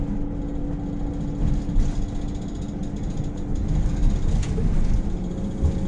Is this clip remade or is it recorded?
recorded